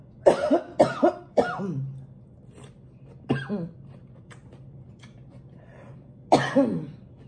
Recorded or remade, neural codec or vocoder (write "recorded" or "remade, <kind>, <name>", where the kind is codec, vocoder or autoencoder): recorded